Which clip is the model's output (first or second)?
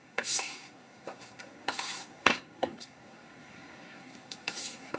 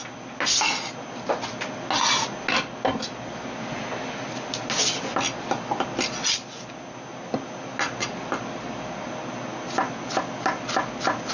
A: first